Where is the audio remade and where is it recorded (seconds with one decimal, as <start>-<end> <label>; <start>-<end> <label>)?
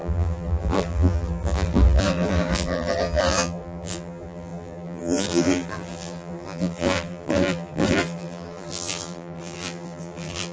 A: 0.0-10.5 remade